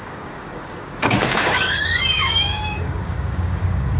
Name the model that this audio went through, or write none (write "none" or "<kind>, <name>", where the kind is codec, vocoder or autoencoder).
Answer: codec, DAC